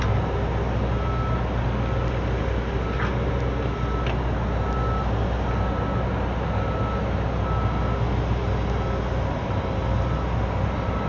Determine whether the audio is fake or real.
real